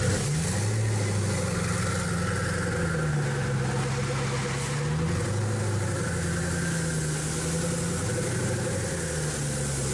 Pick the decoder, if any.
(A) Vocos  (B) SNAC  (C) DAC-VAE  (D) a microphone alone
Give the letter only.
D